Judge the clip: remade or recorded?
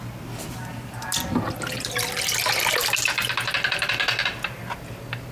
recorded